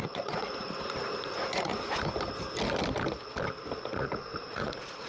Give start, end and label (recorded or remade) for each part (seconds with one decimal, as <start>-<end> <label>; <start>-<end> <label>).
0.0-1.7 remade; 1.7-3.9 recorded; 3.9-5.1 remade